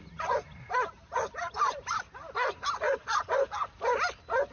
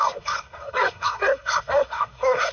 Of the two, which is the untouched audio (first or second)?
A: first